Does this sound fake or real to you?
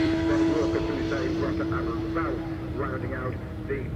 fake